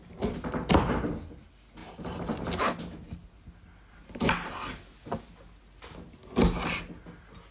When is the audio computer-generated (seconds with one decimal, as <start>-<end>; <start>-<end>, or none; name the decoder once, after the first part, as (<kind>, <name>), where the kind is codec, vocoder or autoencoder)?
1.8-2.6 (vocoder, BigVGAN v2)